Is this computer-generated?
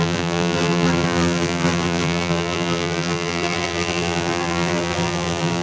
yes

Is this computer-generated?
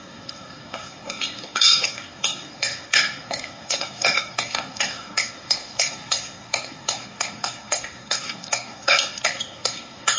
yes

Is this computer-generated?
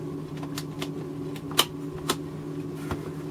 no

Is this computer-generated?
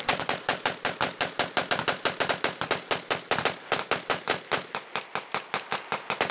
no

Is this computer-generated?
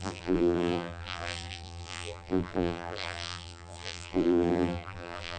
yes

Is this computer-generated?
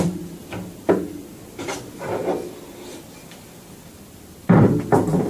yes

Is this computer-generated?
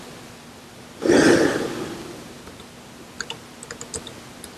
no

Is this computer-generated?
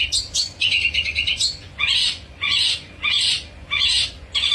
yes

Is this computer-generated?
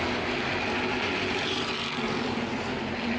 no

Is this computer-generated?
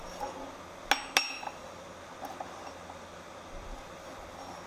no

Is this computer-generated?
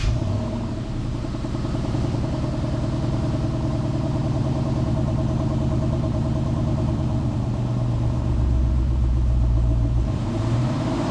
yes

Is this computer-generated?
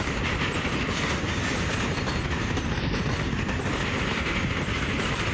no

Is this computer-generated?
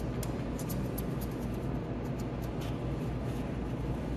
no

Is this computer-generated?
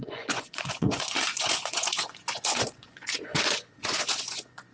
yes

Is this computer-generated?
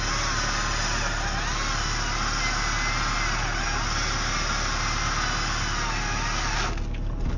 no